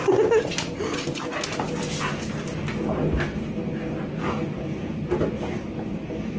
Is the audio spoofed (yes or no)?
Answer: no